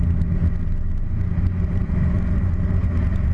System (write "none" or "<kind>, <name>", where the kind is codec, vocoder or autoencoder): none